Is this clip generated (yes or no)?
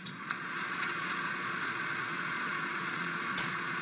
yes